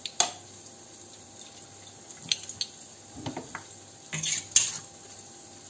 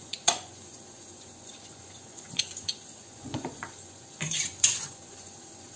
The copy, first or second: second